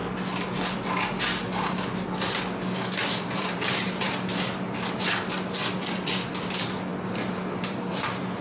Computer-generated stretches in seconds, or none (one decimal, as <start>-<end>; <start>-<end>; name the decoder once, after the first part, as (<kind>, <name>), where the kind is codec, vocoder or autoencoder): 3.0-4.1 (vocoder, BigVGAN v2)